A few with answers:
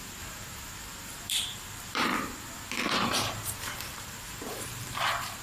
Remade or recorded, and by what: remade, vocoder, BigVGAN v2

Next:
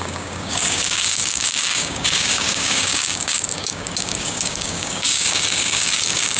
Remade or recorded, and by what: remade, codec, DAC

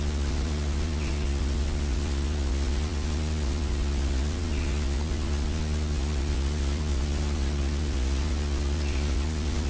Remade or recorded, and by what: remade, vocoder, Vocos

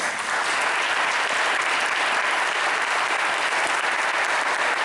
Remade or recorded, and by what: recorded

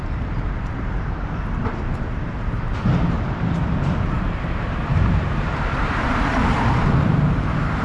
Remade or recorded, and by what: remade, vocoder, BigVGAN v2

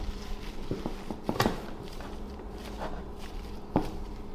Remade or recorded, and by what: remade, vocoder, BigVGAN v2